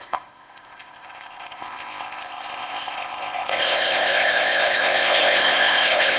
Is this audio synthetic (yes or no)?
yes